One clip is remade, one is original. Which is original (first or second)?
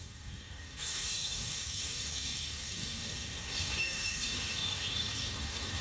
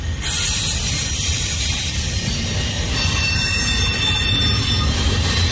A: second